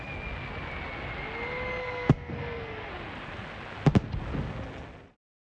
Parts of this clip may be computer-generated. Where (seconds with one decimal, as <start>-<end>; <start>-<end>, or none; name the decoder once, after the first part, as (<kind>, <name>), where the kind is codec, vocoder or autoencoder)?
1.8-2.9 (codec, SNAC)